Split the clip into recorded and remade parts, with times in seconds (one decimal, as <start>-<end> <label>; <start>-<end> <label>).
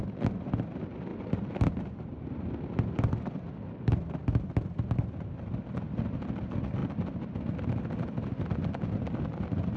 0.0-9.8 recorded